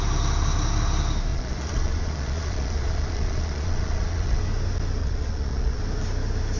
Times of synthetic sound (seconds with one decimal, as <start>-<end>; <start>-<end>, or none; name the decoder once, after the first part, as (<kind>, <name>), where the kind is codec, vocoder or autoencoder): 1.3-4.4 (vocoder, Vocos); 5.0-5.8